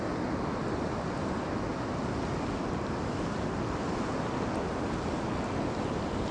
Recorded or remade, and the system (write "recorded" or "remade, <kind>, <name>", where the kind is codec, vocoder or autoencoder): recorded